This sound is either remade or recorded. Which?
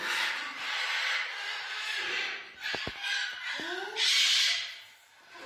recorded